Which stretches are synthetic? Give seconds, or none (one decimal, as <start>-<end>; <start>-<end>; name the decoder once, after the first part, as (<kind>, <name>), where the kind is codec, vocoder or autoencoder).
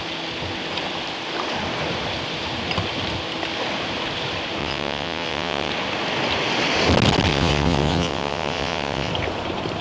4.6-5.7 (vocoder, WaveNeXt); 7.3-9.1